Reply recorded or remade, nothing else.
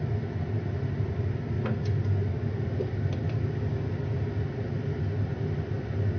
recorded